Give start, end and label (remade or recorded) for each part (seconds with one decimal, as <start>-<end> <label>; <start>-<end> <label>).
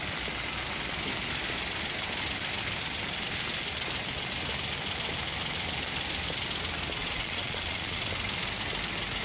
0.0-7.0 recorded; 7.0-8.0 remade; 8.0-9.2 recorded